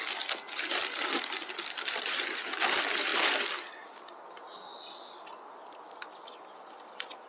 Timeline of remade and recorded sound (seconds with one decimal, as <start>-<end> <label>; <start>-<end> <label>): 0.0-7.3 recorded